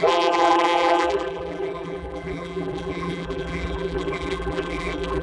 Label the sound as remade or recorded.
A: remade